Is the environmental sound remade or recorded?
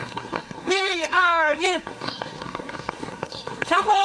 remade